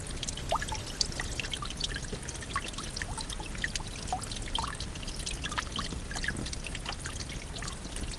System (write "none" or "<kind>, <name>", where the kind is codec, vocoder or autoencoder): none